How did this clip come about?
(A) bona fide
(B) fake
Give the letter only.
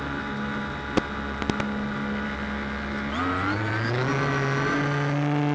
A